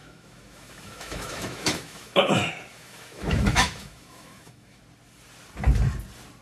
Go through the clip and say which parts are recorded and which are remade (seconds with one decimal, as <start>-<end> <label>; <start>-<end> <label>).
0.0-2.3 remade; 2.3-2.7 recorded; 2.7-4.8 remade; 4.8-6.4 recorded